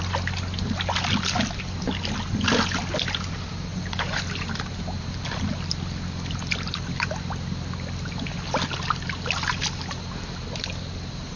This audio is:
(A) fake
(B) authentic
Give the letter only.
B